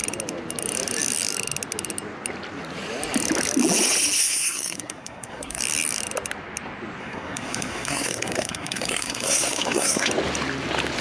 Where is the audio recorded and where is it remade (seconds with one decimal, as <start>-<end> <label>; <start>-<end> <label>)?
0.0-4.2 recorded; 4.2-5.6 remade; 5.6-7.0 recorded; 7.0-10.1 remade; 10.1-11.0 recorded